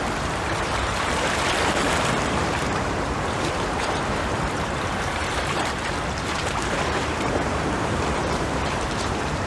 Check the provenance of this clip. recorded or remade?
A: remade